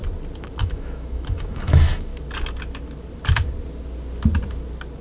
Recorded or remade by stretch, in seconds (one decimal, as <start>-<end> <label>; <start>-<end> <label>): 0.0-0.6 recorded; 0.6-2.1 remade; 2.1-5.0 recorded